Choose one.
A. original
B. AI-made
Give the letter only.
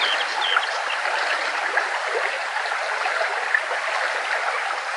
A